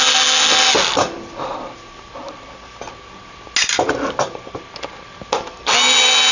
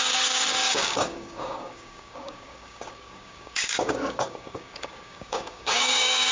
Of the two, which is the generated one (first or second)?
second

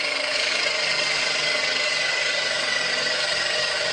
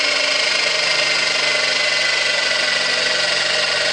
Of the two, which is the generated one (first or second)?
first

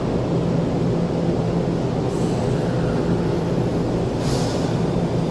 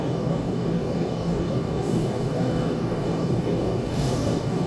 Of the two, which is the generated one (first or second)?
second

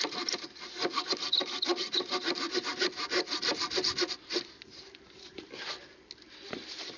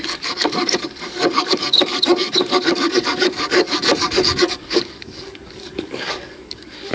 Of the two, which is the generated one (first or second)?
second